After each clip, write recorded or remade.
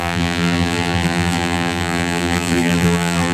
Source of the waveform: remade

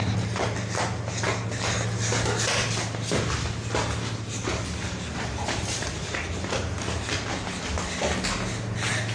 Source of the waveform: recorded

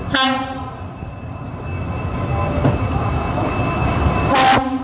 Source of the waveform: recorded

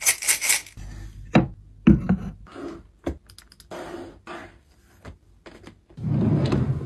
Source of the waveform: recorded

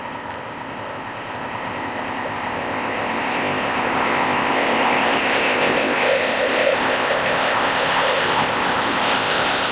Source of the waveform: remade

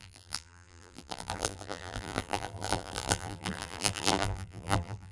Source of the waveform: remade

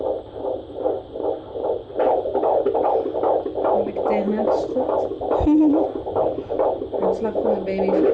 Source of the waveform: recorded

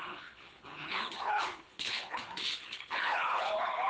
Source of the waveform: remade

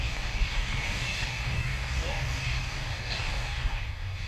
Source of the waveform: remade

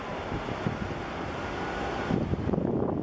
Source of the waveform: recorded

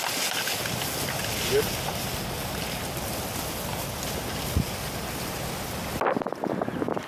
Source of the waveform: recorded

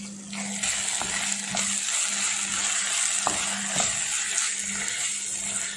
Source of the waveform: recorded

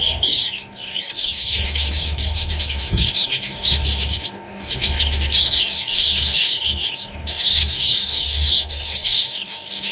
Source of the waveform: remade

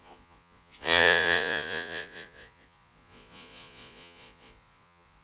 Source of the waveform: remade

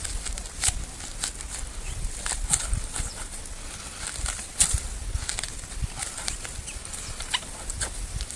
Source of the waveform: recorded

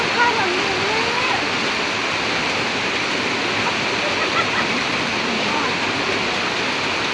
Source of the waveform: recorded